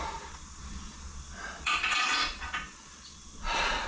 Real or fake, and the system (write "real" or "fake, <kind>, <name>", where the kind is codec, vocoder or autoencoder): fake, vocoder, Vocos